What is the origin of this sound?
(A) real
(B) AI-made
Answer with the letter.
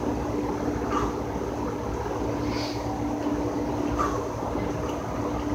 A